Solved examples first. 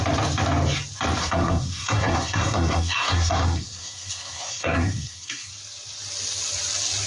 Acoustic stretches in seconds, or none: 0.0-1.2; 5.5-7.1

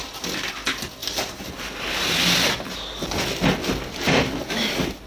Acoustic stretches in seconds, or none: 0.0-5.1